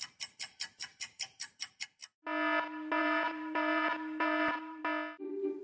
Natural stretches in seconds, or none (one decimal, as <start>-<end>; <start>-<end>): 2.0-3.0; 4.8-5.6